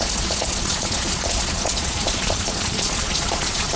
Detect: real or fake fake